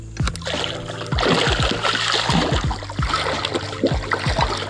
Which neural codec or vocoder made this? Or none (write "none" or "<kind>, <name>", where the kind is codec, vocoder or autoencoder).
none